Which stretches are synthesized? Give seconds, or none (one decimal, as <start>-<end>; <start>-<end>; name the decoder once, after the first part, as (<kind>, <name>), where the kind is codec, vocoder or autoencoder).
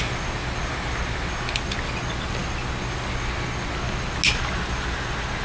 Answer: none